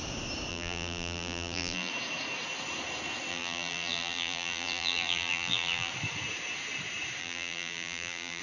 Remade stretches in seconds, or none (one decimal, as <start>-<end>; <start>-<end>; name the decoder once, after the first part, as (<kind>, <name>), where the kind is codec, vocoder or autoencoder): 0.5-1.9 (vocoder, BigVGAN v2); 3.3-5.9; 7.2-8.4